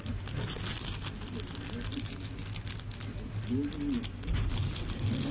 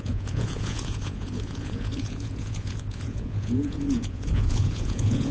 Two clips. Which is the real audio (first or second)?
first